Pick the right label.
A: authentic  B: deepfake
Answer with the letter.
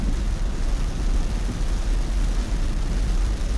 A